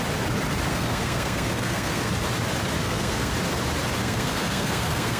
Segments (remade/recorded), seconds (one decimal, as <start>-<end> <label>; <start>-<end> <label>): 0.0-0.7 recorded; 0.7-2.1 remade; 2.1-2.8 recorded; 2.8-3.3 remade; 3.3-4.0 recorded; 4.0-5.2 remade